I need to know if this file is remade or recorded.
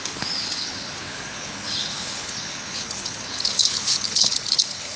remade